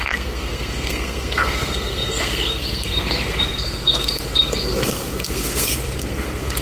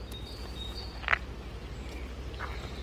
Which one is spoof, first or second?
first